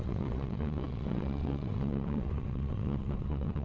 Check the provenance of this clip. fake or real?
fake